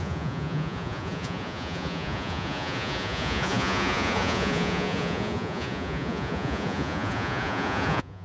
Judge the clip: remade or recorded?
remade